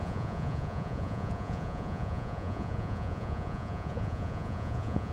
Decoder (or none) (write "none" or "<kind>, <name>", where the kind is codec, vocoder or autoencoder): vocoder, Vocos